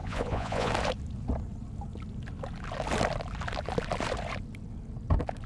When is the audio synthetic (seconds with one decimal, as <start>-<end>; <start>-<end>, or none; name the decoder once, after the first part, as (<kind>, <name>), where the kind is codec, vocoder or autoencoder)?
0.0-0.7 (vocoder, Vocos)